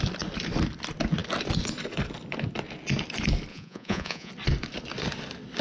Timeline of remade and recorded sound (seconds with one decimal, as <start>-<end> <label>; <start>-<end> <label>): 0.0-3.5 recorded; 3.5-4.3 remade; 4.3-5.6 recorded